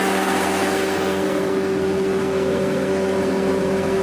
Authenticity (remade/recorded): remade